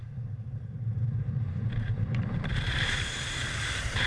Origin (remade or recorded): remade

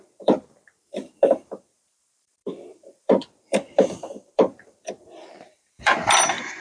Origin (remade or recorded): remade